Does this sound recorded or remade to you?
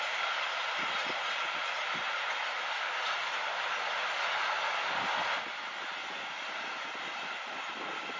recorded